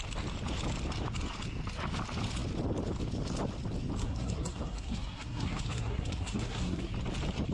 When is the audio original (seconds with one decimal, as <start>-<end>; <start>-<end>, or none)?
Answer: 0.0-4.0; 6.9-7.5